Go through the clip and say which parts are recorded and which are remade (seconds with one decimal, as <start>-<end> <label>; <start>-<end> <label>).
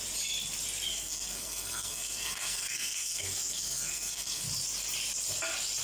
0.0-0.9 recorded; 0.9-4.4 remade; 4.4-5.8 recorded